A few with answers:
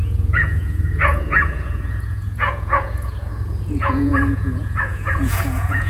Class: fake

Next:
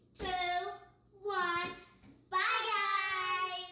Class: real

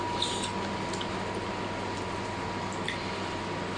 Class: real